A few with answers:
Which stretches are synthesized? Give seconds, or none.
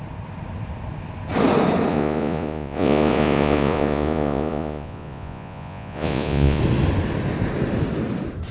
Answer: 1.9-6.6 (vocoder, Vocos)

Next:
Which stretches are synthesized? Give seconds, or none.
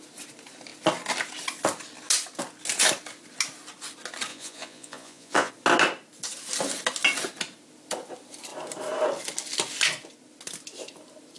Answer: 4.3-5.5 (vocoder, Vocos)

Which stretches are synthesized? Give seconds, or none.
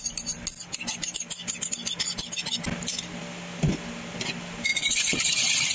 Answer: 4.7-5.2 (vocoder, Vocos)